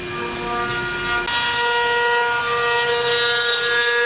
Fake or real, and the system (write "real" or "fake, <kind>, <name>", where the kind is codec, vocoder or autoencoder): real